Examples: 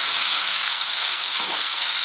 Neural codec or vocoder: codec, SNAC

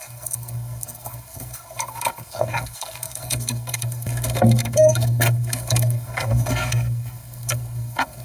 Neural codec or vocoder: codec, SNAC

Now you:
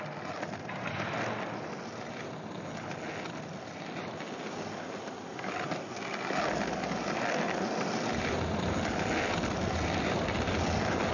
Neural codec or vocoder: none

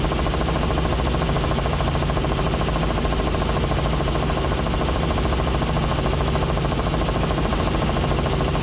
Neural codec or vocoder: none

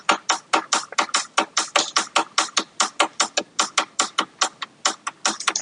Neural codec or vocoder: none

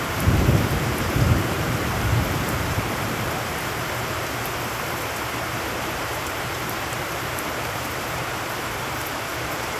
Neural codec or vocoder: vocoder, BigVGAN v2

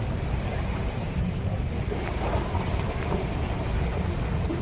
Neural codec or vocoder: none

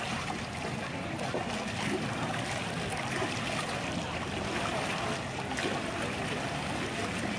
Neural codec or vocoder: none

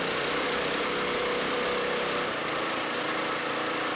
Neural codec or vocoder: vocoder, BigVGAN v2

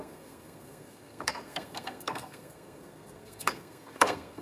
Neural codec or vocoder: codec, SNAC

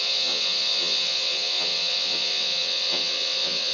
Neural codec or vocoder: vocoder, WaveNeXt